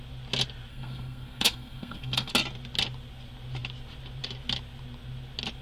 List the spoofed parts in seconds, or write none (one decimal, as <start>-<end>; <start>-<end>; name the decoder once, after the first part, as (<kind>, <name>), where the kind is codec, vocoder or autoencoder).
0.7-2.3 (codec, SNAC)